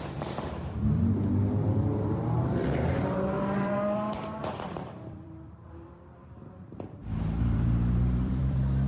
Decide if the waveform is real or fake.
fake